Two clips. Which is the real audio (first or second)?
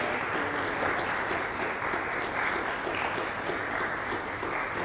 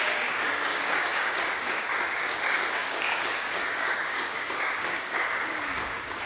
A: first